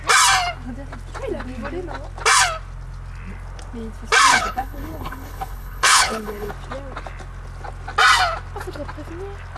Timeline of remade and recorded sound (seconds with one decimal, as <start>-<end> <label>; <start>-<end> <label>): 0.0-4.3 recorded; 4.3-6.5 remade; 6.5-9.6 recorded